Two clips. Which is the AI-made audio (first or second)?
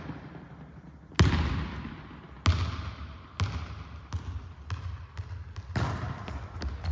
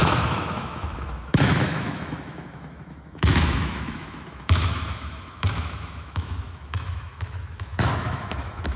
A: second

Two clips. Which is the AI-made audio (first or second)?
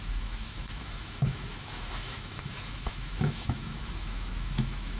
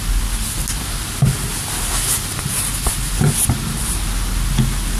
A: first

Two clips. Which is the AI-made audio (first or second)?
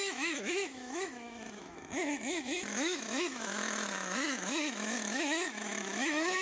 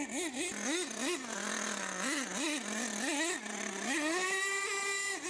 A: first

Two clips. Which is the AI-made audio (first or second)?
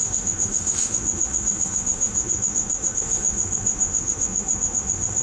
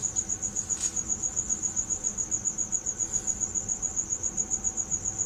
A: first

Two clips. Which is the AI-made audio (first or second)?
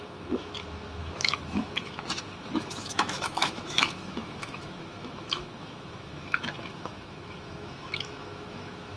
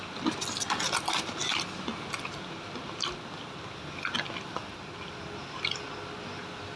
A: first